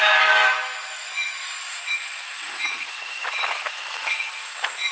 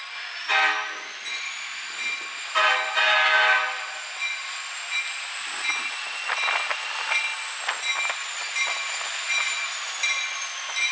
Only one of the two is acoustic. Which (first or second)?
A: second